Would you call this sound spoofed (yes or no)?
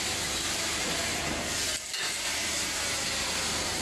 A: no